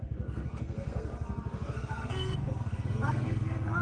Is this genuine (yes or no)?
no